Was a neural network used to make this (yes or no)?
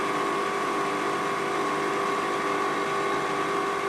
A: no